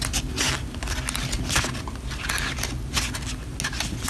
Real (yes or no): yes